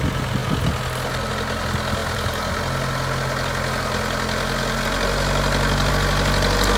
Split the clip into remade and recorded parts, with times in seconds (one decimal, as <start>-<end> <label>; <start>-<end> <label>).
0.0-6.8 recorded